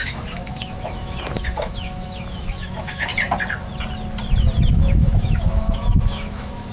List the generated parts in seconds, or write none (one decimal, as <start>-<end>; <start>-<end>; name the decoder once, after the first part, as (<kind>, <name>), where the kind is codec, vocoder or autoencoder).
0.0-3.1 (autoencoder, DAC-VAE); 4.7-6.7